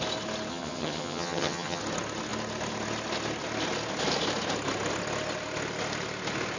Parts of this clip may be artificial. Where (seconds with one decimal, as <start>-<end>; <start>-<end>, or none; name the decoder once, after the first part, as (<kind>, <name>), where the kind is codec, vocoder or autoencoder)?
0.5-1.8 (vocoder, HiFi-GAN)